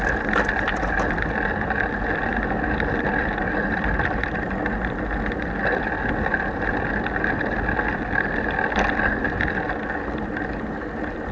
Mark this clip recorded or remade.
recorded